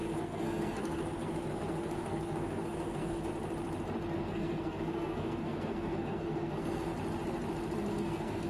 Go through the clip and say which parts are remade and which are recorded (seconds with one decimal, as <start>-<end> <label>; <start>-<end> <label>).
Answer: 0.0-3.3 remade; 3.3-4.1 recorded; 4.1-6.9 remade; 6.9-7.9 recorded; 7.9-8.5 remade

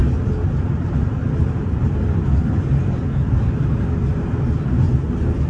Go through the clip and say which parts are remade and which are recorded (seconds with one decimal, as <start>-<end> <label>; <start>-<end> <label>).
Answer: 0.0-5.5 recorded

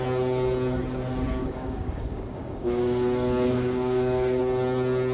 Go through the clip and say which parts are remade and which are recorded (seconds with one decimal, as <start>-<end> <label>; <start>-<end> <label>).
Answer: 0.0-1.3 recorded; 1.3-4.4 remade; 4.4-5.1 recorded

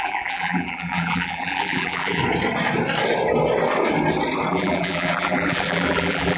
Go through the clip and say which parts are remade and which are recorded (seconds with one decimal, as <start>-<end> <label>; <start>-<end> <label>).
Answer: 0.0-2.2 remade; 2.2-4.5 recorded; 4.5-6.4 remade

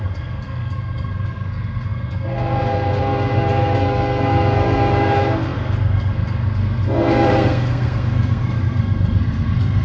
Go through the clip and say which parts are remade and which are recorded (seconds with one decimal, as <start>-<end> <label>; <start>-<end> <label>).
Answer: 0.0-9.8 remade

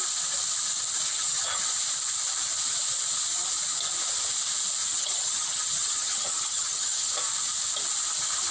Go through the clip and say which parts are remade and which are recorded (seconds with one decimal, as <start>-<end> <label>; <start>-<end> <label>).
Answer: 0.0-1.1 recorded; 1.1-1.6 remade; 1.6-4.8 recorded; 4.8-7.1 remade; 7.1-8.5 recorded

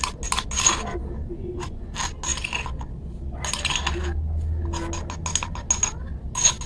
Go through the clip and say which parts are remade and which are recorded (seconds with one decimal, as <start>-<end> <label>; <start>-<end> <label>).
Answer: 0.0-1.2 recorded; 1.2-1.9 remade; 1.9-6.7 recorded